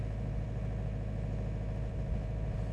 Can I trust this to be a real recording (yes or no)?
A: yes